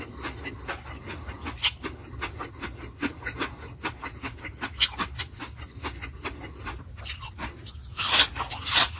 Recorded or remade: recorded